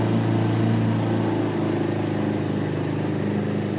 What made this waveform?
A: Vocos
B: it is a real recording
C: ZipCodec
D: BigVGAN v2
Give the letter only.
B